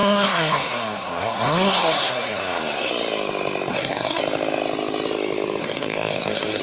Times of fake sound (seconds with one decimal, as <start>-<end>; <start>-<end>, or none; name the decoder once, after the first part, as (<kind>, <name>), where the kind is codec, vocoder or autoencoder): 0.0-2.9 (codec, SNAC); 3.7-4.2; 5.6-6.6